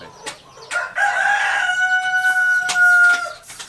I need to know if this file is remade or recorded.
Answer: recorded